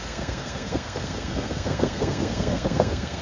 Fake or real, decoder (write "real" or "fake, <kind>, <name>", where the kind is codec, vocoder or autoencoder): fake, codec, SNAC